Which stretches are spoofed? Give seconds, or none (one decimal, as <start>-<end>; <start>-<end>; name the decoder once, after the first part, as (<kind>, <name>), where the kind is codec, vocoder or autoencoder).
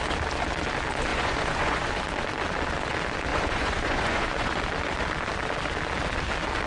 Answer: 1.1-1.9 (vocoder, Vocos); 3.3-4.6